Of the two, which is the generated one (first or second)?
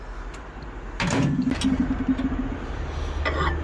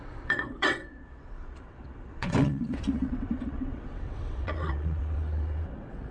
second